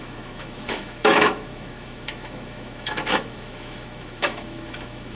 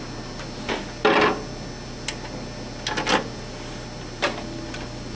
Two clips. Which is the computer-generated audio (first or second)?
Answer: first